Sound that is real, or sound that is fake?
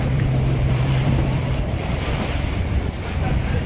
fake